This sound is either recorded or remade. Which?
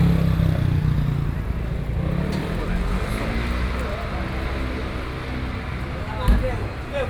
recorded